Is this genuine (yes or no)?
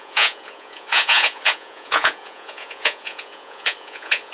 no